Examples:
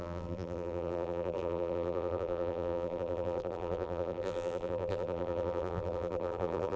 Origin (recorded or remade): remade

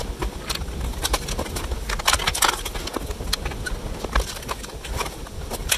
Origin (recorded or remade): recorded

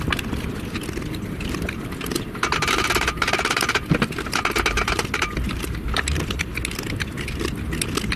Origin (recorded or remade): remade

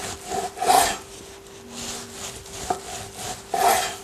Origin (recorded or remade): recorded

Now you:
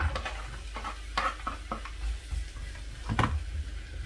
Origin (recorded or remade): recorded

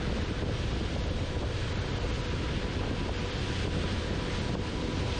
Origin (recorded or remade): remade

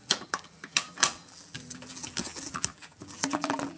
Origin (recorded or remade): remade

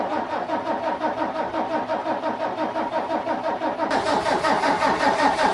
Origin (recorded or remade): remade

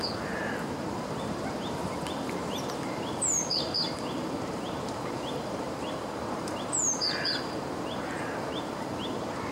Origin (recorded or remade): remade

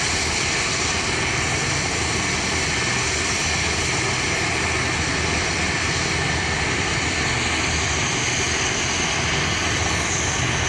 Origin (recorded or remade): recorded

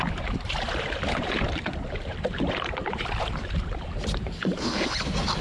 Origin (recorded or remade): remade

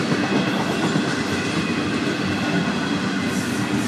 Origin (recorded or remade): recorded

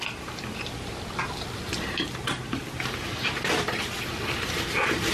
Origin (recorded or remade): remade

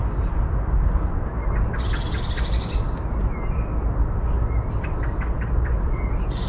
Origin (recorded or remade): recorded